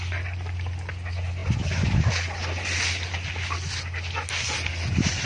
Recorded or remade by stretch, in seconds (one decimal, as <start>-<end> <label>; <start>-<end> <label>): 0.0-5.3 recorded